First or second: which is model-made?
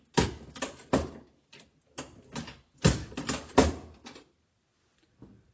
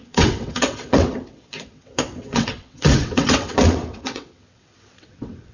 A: second